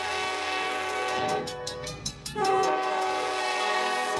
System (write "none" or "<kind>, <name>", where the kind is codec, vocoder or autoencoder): codec, SNAC